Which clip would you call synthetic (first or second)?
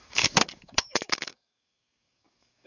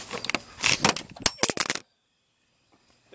first